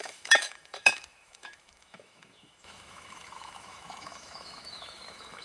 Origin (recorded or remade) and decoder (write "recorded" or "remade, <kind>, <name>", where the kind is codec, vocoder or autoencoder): remade, autoencoder, DAC-VAE